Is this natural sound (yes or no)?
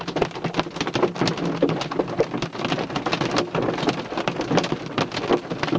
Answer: yes